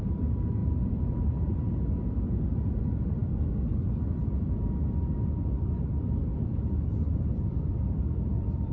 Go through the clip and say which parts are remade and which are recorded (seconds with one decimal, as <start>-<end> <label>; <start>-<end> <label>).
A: 0.0-0.6 recorded; 0.6-2.0 remade; 2.0-6.3 recorded; 6.3-8.7 remade